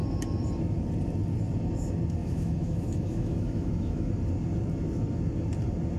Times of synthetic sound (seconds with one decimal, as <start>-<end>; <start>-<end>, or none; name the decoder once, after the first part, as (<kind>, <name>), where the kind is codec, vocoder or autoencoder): 2.2-4.1 (autoencoder, DAC-VAE)